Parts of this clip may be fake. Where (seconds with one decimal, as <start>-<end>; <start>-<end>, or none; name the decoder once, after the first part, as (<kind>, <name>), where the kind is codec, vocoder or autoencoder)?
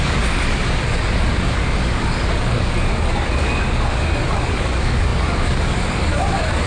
0.0-6.7 (codec, DAC)